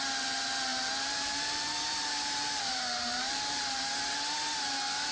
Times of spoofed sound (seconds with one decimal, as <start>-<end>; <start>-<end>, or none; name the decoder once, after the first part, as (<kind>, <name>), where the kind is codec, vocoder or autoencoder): 0.7-3.8 (vocoder, BigVGAN v2)